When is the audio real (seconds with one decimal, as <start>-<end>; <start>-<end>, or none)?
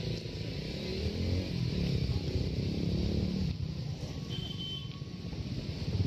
0.0-6.1